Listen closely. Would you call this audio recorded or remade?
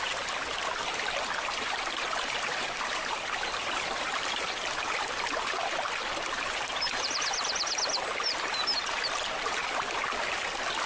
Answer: recorded